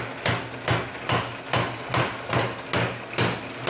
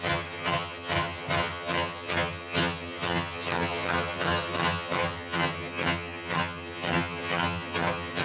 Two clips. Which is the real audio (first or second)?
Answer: first